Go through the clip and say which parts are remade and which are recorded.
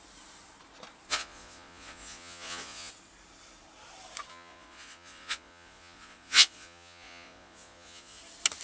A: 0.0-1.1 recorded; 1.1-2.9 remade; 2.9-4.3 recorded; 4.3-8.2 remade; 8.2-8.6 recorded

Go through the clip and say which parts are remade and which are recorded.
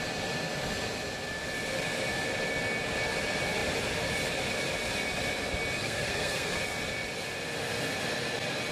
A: 0.0-5.8 recorded; 5.8-6.5 remade; 6.5-8.7 recorded